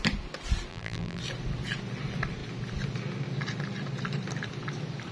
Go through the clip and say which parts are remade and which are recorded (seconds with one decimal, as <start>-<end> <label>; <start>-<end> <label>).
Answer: 0.0-0.7 recorded; 0.7-1.2 remade; 1.2-5.1 recorded